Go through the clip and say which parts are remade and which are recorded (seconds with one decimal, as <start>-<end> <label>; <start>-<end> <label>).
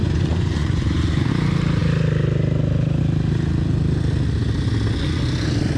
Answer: 0.0-1.3 remade; 1.3-5.8 recorded